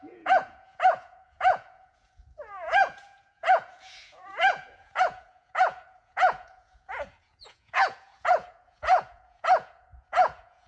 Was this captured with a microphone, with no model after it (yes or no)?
no